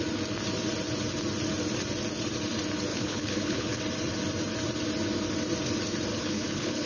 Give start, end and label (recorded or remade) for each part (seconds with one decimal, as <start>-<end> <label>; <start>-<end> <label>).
0.0-2.9 recorded; 2.9-3.8 remade; 3.8-6.1 recorded; 6.1-6.9 remade